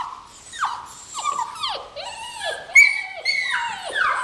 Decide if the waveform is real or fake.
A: real